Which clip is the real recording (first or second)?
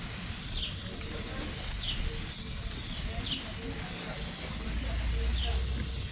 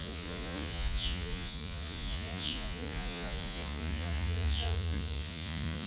first